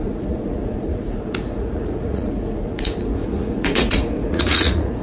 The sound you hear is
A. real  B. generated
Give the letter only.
B